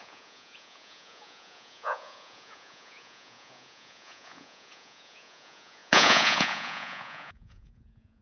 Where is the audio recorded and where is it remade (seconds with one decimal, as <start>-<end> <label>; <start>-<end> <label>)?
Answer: 0.0-8.2 remade